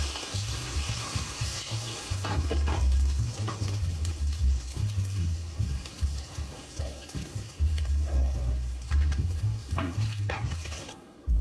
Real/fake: fake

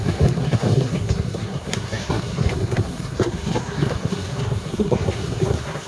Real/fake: fake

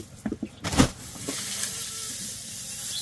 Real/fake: real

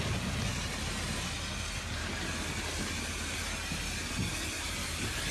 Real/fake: real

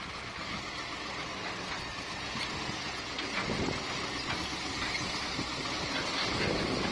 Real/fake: real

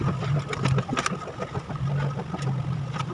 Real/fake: real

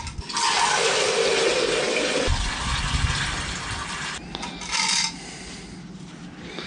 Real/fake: real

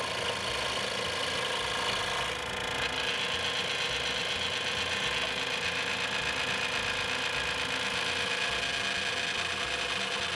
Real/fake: real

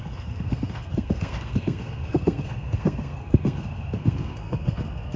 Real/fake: fake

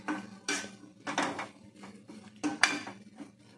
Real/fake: real